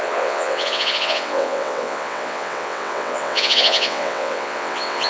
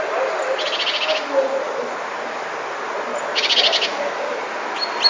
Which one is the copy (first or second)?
first